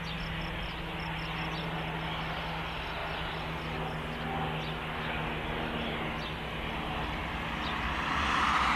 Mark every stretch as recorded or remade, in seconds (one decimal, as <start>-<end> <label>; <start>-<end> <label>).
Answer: 0.0-8.8 recorded